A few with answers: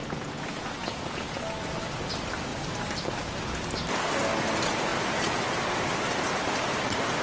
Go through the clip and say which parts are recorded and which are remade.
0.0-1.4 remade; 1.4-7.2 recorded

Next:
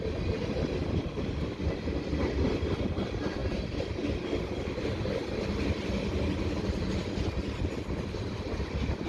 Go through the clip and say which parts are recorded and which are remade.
0.0-9.1 recorded

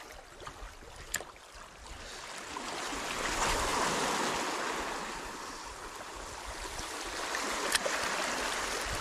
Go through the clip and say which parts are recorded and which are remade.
0.0-9.0 recorded

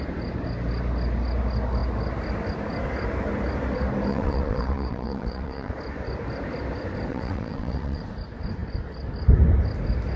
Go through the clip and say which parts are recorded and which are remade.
0.0-4.1 recorded; 4.1-5.7 remade; 5.7-7.1 recorded; 7.1-8.0 remade; 8.0-10.2 recorded

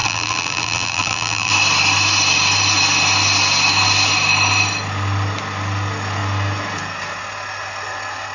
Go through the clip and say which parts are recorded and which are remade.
0.0-1.5 remade; 1.5-8.3 recorded

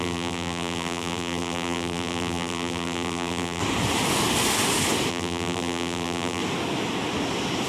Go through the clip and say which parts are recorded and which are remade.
0.0-3.6 remade; 3.6-5.1 recorded; 5.1-6.4 remade; 6.4-7.7 recorded

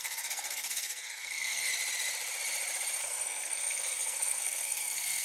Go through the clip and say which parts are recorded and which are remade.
0.0-1.7 remade; 1.7-3.0 recorded; 3.0-5.2 remade